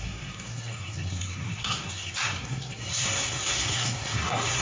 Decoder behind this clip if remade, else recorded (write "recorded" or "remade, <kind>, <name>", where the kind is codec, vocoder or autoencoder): remade, codec, SNAC